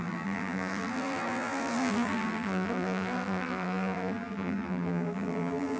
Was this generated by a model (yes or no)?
yes